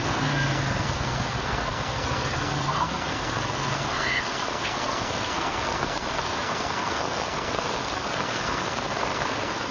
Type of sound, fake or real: fake